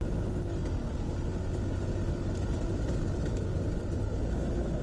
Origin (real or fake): real